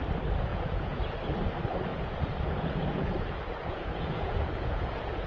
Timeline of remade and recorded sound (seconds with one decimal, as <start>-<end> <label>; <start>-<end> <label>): 0.0-0.5 recorded; 0.5-1.0 remade; 1.0-1.9 recorded; 1.9-5.3 remade